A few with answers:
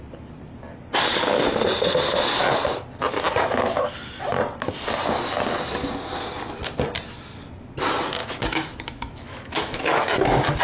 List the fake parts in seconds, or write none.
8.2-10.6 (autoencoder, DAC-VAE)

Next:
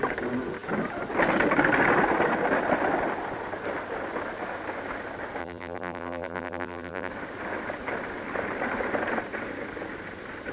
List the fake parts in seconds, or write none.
5.4-7.1 (vocoder, BigVGAN v2)

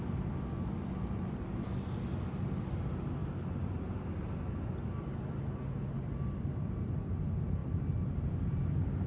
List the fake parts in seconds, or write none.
0.0-3.2 (vocoder, BigVGAN v2); 7.1-9.1

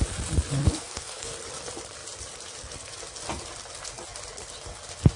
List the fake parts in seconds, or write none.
0.6-1.3 (codec, SNAC)

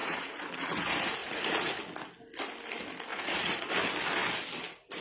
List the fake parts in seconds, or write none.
0.0-0.5 (vocoder, Vocos); 1.2-1.8; 3.1-3.7

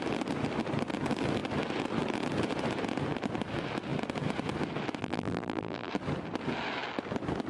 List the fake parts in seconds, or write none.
5.0-5.9 (vocoder, BigVGAN v2)

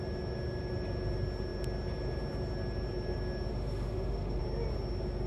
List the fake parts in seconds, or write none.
3.5-4.4 (autoencoder, DAC-VAE)

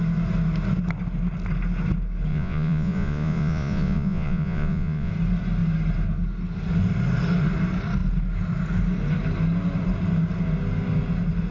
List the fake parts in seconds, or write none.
2.3-5.1 (vocoder, Vocos)